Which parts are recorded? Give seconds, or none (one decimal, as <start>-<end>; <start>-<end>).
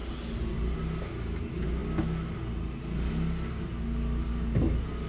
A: 0.0-5.1